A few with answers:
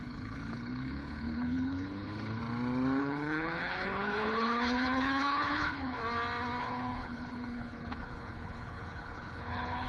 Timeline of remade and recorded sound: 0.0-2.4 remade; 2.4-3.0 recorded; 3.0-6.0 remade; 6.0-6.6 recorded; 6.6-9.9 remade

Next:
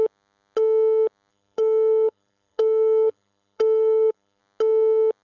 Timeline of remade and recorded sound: 0.0-1.3 recorded; 1.3-4.4 remade; 4.4-5.2 recorded

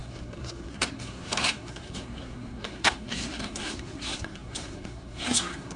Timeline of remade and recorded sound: 0.0-5.8 remade

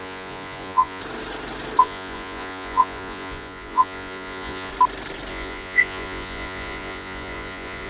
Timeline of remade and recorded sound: 0.0-1.0 remade; 1.0-1.8 recorded; 1.8-4.7 remade; 4.7-5.3 recorded; 5.3-7.9 remade

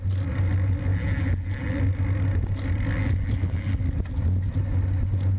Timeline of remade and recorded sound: 0.0-5.4 recorded